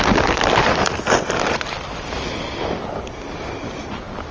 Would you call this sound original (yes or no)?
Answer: yes